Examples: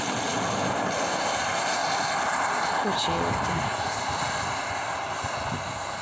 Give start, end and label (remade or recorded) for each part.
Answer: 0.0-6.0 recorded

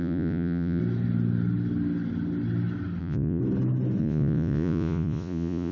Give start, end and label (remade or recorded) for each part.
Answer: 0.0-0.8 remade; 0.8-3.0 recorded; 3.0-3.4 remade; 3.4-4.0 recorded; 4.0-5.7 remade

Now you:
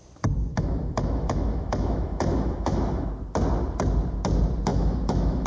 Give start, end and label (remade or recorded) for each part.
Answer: 0.0-0.5 recorded; 0.5-3.1 remade; 3.1-4.7 recorded; 4.7-5.5 remade

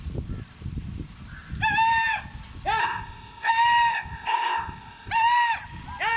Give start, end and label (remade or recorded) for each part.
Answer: 0.0-2.8 recorded; 2.8-3.5 remade; 3.5-3.9 recorded; 3.9-5.1 remade; 5.1-6.2 recorded